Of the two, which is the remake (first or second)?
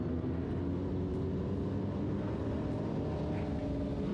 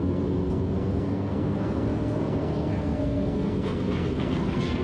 second